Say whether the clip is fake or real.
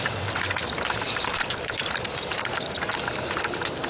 fake